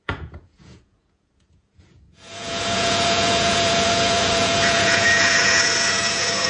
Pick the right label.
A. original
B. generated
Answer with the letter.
B